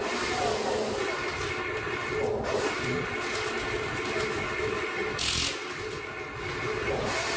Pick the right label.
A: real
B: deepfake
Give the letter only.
A